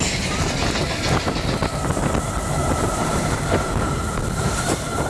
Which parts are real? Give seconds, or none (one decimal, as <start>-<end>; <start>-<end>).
0.0-2.6